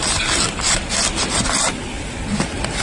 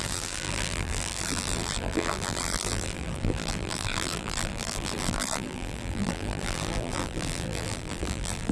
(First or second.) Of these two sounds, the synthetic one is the second